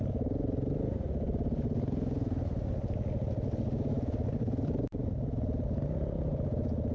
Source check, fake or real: real